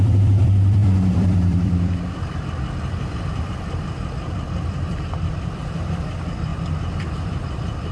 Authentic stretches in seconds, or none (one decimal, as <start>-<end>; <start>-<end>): 6.5-7.0